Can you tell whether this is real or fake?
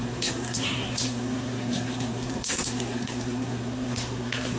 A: fake